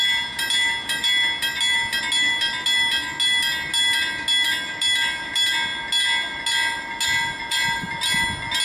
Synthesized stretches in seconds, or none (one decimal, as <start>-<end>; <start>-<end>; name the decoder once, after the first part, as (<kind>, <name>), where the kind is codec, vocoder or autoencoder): none